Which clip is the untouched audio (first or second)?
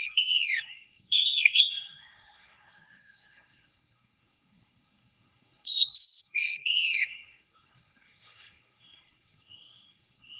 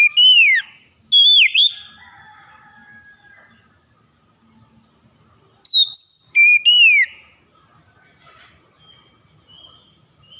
second